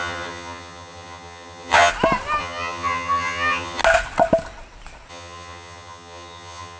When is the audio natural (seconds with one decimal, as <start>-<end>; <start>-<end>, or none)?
1.9-2.4; 3.8-5.1